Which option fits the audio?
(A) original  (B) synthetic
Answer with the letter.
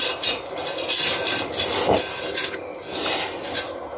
A